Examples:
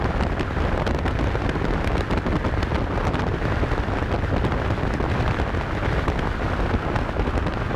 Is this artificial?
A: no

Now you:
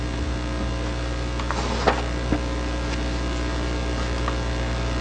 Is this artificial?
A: no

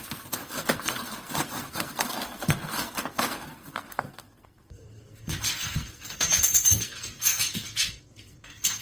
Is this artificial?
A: yes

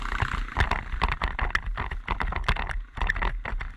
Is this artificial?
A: no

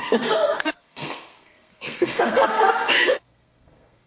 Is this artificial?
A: yes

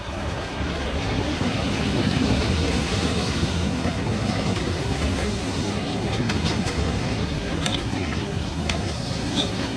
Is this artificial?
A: yes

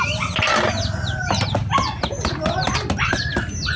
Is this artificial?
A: no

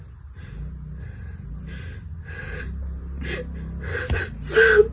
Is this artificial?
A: no